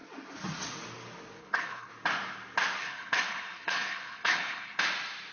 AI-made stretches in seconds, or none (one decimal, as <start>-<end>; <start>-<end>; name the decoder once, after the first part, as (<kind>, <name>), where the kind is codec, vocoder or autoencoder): 1.4-1.9 (codec, HILCodec); 2.8-4.8